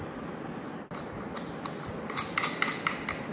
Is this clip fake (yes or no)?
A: no